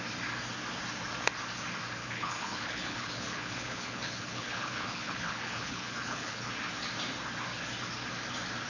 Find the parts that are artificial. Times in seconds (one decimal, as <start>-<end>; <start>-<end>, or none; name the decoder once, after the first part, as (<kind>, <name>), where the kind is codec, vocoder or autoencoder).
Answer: 2.0-6.5 (codec, HILCodec)